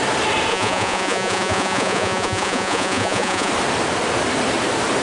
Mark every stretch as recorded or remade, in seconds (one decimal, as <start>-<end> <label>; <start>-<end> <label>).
0.0-0.5 recorded; 0.5-3.5 remade; 3.5-5.0 recorded